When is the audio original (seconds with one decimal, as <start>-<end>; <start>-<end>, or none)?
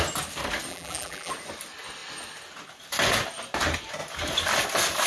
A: 0.0-0.7; 1.3-5.1